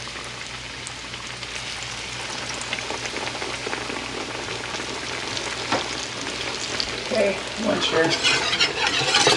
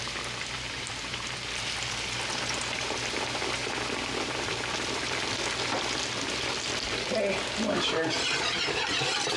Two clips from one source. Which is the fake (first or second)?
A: second